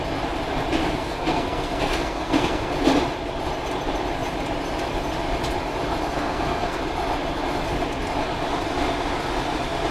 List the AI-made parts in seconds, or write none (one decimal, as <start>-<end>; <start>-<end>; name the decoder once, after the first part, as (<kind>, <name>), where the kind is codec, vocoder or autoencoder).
0.8-2.7 (codec, SNAC); 6.1-6.8